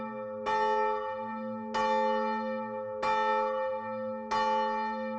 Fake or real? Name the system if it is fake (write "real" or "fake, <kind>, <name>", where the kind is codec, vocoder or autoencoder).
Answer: real